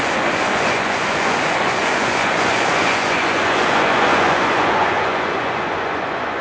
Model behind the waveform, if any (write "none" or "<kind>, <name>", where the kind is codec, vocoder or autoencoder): vocoder, Vocos